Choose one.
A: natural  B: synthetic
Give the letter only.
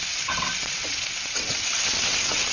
B